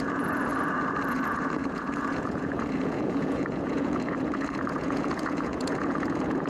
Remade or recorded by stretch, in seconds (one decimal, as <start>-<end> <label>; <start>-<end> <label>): 0.0-0.5 remade; 0.5-1.1 recorded; 1.1-6.5 remade